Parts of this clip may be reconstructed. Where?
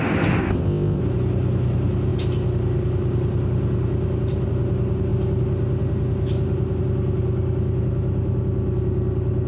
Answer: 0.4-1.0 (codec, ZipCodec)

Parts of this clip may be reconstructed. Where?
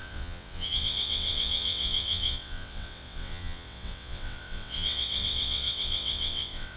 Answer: 0.0-6.8 (vocoder, WaveNeXt)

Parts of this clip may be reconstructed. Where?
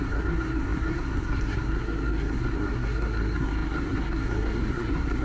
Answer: 0.0-5.2 (codec, SNAC)